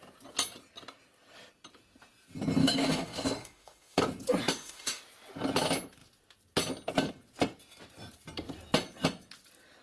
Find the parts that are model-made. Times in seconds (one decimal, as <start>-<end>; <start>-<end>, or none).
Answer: 2.6-4.0; 4.5-5.0

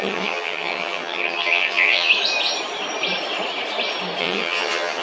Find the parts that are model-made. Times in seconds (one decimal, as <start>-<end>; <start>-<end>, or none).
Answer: 0.0-2.1; 4.2-5.0